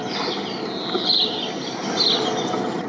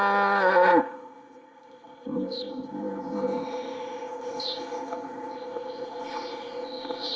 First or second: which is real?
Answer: first